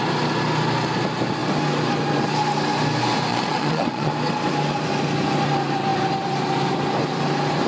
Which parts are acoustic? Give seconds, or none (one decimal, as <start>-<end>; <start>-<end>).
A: 0.0-3.3; 4.1-7.7